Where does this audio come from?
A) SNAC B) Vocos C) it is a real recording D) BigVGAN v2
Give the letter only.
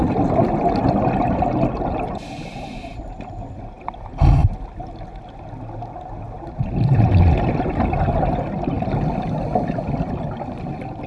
C